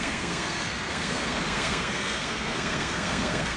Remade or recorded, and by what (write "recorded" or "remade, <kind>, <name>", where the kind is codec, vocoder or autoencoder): remade, codec, SNAC